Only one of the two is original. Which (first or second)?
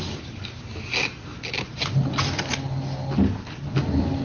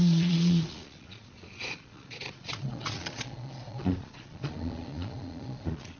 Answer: first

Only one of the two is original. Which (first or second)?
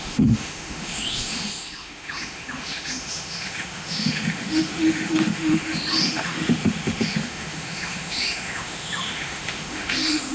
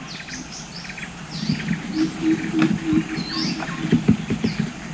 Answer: second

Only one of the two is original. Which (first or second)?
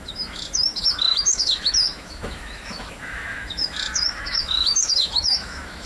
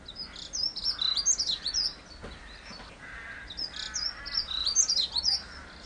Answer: second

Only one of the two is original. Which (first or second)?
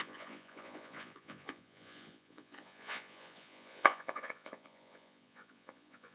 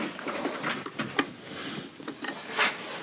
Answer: second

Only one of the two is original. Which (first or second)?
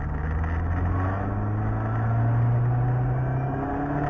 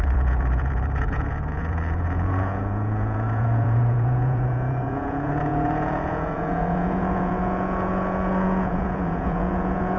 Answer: first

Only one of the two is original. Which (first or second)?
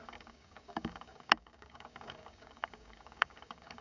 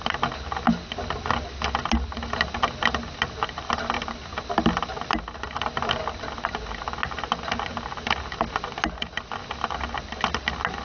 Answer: second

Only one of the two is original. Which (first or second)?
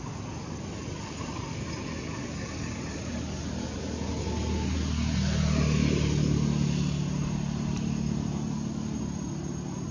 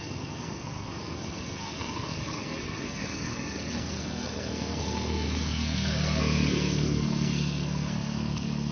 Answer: first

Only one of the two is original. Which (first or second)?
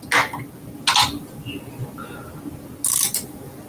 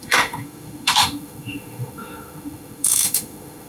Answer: first